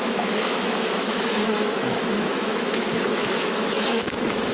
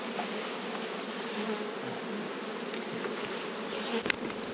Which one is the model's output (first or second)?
first